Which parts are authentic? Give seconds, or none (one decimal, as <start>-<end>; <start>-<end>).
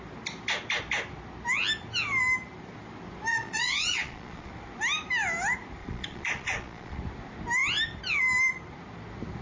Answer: 0.0-3.3; 4.5-5.8; 7.0-9.4